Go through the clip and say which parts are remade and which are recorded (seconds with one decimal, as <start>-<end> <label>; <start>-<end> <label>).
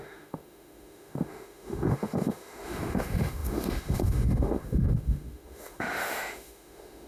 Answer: 0.0-7.1 remade